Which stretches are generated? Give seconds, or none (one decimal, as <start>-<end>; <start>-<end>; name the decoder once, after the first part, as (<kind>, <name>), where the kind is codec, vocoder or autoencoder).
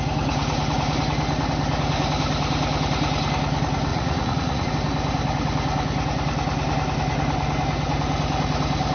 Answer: 3.9-4.7 (vocoder, Vocos)